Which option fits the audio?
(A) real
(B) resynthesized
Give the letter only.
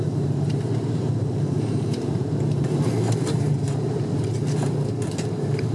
B